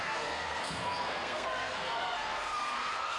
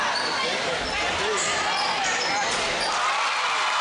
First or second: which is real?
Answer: second